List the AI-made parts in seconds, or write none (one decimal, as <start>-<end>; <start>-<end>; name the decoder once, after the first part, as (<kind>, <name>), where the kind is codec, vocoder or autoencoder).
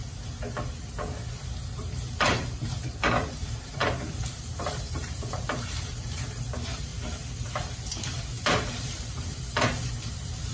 1.4-10.5 (vocoder, BigVGAN v2)